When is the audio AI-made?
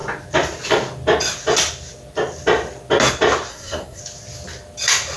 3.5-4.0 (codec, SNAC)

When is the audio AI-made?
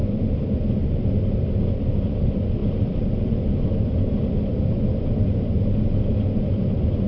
2.6-3.9 (vocoder, BigVGAN v2)